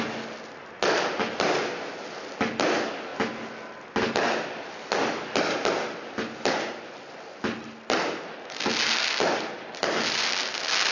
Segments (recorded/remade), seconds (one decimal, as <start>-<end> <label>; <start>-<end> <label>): 0.0-10.9 recorded